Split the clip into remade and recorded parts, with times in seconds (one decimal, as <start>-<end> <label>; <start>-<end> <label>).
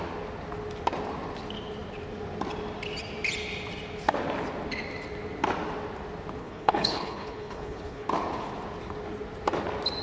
0.0-6.4 recorded; 6.4-8.1 remade; 8.1-10.0 recorded